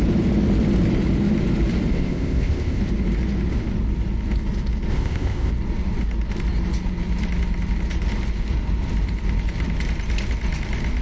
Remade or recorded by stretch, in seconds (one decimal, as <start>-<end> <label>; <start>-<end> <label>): 0.0-1.9 recorded; 1.9-2.8 remade; 2.8-4.9 recorded; 4.9-5.5 remade; 5.5-11.0 recorded